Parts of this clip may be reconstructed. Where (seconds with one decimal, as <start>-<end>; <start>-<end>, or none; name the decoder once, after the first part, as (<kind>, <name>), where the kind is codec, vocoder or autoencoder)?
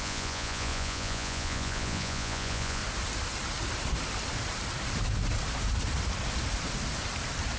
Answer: 0.0-2.8 (vocoder, Vocos)